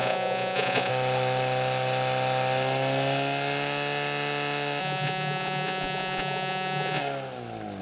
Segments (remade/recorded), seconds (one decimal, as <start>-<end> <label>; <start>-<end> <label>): 0.0-0.9 remade; 0.9-4.8 recorded; 4.8-7.0 remade; 7.0-7.8 recorded